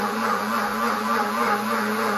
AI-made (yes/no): yes